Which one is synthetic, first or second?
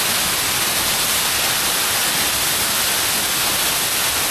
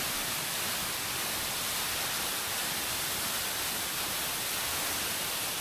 second